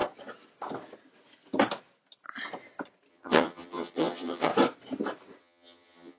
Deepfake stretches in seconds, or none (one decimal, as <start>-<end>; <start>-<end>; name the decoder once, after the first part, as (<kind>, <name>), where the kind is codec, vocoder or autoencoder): 3.1-4.5 (vocoder, HiFi-GAN); 5.4-6.2